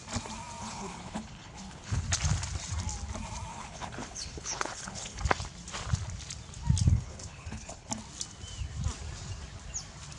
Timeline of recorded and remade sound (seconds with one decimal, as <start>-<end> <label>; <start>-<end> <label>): 0.0-0.6 recorded; 0.6-2.0 remade; 2.0-3.5 recorded; 3.5-5.2 remade; 5.2-6.9 recorded; 6.9-7.9 remade; 7.9-10.2 recorded